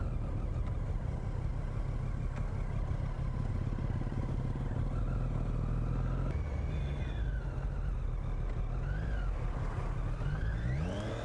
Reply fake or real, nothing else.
real